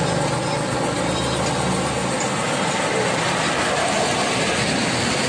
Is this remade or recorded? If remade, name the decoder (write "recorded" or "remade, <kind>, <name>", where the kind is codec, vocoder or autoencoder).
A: recorded